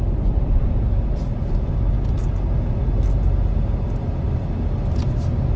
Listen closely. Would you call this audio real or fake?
real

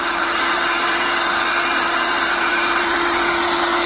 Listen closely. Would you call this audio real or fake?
fake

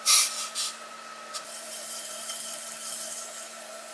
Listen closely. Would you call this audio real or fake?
real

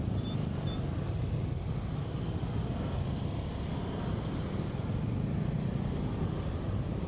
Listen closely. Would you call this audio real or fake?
real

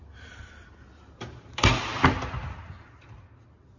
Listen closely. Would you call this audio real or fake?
real